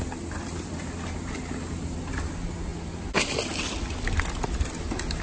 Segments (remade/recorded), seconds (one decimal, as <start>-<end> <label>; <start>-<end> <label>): 0.0-5.2 recorded